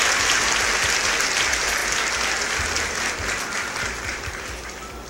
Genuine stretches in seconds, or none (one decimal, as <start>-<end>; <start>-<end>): 0.0-4.1